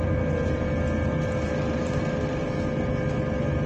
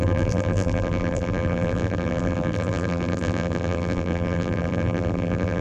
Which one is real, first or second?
first